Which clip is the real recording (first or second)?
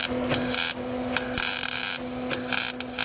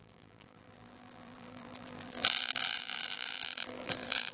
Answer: first